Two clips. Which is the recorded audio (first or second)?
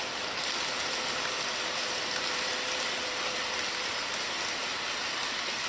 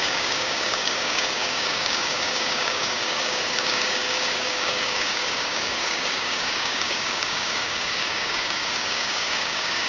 first